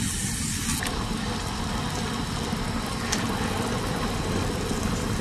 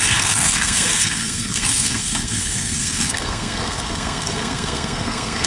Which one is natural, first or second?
first